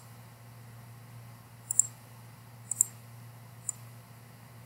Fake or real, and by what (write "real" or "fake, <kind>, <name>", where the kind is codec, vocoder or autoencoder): real